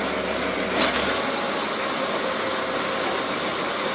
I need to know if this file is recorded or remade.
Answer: recorded